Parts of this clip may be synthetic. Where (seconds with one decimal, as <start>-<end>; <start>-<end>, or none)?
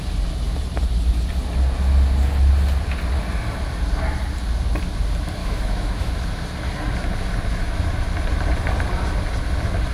5.4-6.1